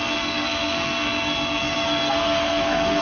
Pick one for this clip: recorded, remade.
remade